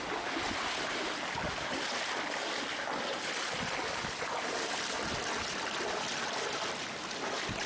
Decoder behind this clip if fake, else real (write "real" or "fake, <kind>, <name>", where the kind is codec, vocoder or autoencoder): real